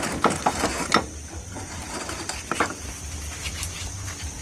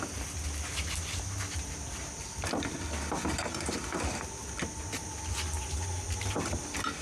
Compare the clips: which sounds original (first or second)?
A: second